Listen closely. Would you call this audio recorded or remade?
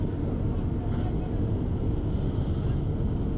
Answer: recorded